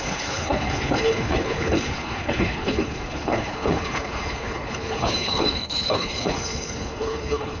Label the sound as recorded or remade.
remade